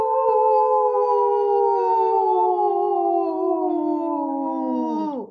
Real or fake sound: real